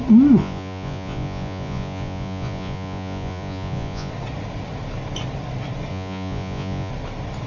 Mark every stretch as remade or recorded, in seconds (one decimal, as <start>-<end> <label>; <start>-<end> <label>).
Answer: 0.0-0.4 recorded; 0.4-4.1 remade; 4.1-5.9 recorded; 5.9-6.9 remade; 6.9-7.5 recorded